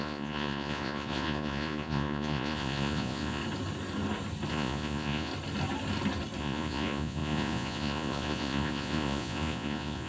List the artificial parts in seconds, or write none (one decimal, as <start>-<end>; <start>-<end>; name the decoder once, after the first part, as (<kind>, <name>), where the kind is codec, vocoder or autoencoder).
0.0-3.4 (vocoder, Vocos); 4.5-5.3; 6.4-10.1